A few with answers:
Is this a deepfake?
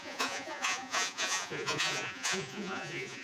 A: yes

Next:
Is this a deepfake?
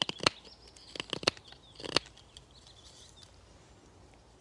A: no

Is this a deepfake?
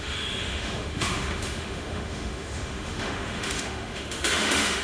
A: yes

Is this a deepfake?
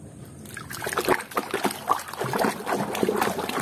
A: no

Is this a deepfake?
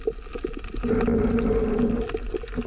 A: no